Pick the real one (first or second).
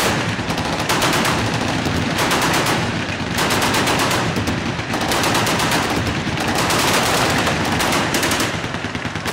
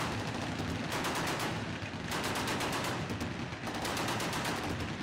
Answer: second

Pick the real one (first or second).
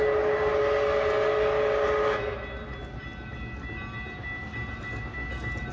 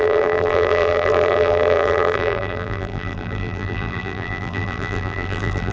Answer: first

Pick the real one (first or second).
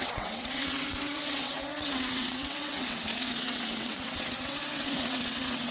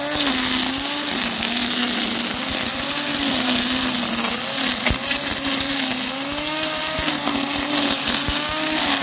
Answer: second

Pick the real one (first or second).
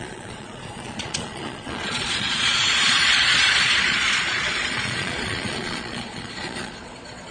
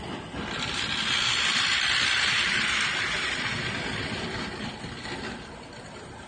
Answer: second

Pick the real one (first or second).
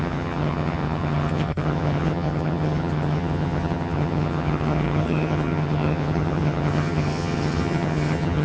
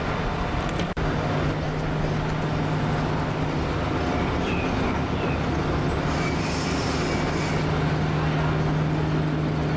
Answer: second